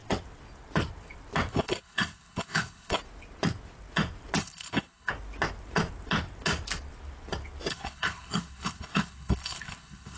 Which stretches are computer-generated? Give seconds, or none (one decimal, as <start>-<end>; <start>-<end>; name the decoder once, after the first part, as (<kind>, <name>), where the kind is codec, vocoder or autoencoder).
1.5-3.0 (codec, HILCodec); 4.4-5.1; 7.7-10.2